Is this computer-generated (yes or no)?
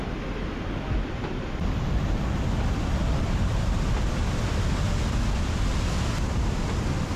yes